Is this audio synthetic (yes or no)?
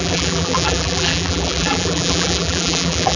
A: yes